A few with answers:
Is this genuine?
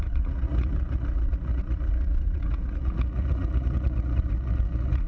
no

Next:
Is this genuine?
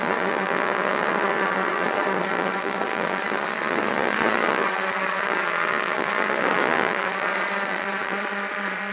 no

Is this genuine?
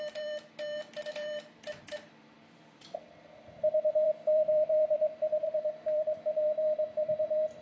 no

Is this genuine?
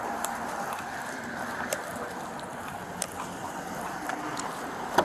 yes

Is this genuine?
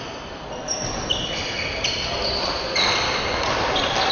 yes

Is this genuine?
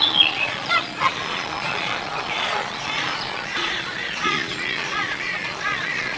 no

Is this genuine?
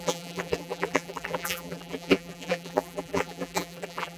no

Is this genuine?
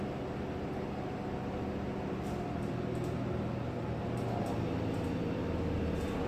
yes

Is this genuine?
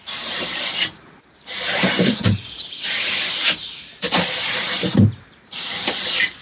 no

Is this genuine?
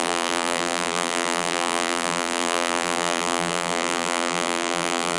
no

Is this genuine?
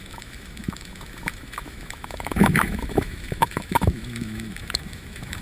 no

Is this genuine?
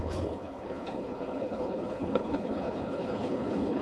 no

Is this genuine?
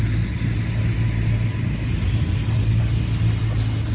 yes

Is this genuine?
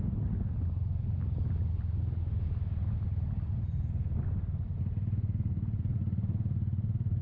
yes